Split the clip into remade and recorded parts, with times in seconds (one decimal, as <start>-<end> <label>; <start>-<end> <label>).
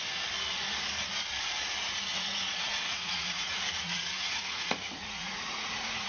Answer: 0.0-2.1 recorded; 2.1-6.1 remade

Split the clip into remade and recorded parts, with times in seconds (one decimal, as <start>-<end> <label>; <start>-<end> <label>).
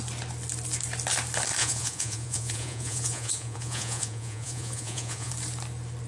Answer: 0.0-1.6 recorded; 1.6-5.3 remade; 5.3-6.1 recorded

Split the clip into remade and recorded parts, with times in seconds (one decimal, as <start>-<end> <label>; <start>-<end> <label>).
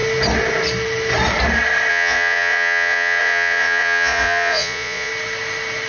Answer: 0.0-1.9 recorded; 1.9-5.1 remade; 5.1-5.9 recorded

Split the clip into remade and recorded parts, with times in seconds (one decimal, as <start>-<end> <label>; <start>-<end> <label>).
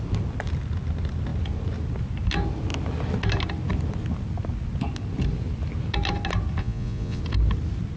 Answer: 0.0-6.6 recorded; 6.6-7.2 remade; 7.2-8.0 recorded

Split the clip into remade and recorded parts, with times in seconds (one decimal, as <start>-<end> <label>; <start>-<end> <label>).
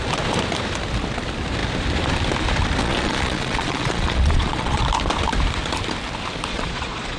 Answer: 0.0-2.8 recorded; 2.8-4.8 remade; 4.8-6.5 recorded; 6.5-7.2 remade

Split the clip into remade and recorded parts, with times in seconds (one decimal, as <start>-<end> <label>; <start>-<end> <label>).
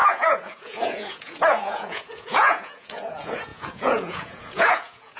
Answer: 0.0-5.2 remade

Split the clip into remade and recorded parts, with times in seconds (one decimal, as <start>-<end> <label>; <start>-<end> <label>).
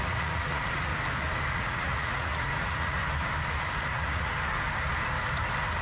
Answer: 0.0-0.9 remade; 0.9-1.5 recorded; 1.5-3.0 remade; 3.0-3.9 recorded; 3.9-4.3 remade; 4.3-5.8 recorded